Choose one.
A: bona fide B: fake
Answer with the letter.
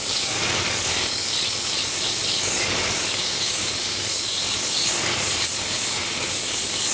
B